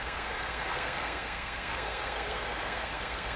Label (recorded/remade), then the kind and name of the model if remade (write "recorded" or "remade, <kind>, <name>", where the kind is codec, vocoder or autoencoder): remade, codec, SNAC